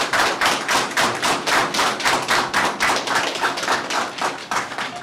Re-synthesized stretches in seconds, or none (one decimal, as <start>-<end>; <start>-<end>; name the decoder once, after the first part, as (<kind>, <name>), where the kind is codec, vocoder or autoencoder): 3.3-4.0 (codec, DAC); 4.4-5.0